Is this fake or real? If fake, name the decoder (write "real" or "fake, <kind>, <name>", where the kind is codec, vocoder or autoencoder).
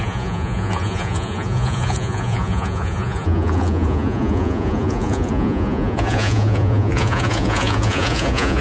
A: fake, vocoder, Vocos